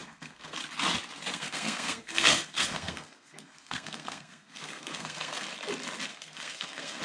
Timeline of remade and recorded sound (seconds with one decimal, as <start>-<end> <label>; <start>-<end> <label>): 0.0-0.6 remade; 0.6-1.3 recorded; 1.3-5.5 remade; 5.5-6.1 recorded; 6.1-7.0 remade